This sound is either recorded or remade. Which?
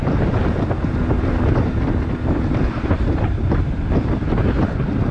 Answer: recorded